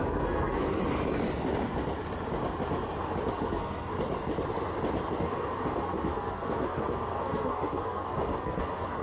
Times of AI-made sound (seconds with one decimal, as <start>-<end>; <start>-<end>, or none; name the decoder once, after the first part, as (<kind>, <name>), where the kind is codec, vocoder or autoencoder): 0.0-0.8 (codec, SNAC); 3.3-3.9; 5.2-9.0